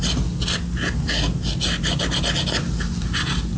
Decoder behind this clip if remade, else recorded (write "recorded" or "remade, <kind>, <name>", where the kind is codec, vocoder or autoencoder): recorded